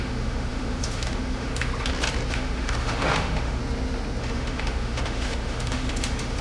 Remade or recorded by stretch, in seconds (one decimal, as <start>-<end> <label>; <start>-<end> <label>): 0.0-1.7 remade; 1.7-2.3 recorded; 2.3-3.6 remade; 3.6-4.2 recorded; 4.2-6.4 remade